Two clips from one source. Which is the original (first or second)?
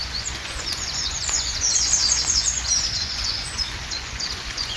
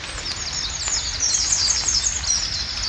second